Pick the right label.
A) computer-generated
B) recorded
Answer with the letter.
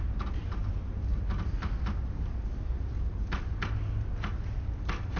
B